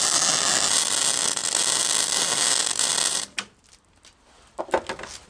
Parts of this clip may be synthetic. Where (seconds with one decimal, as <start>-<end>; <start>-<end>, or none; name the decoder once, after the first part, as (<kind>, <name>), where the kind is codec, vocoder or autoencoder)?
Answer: none